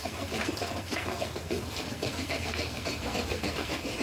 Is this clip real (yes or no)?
no